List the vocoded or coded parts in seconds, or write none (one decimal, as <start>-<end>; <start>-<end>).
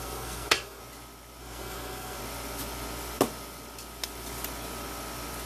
0.0-0.8; 1.4-2.2